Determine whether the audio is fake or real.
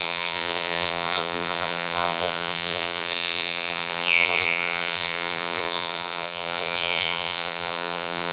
fake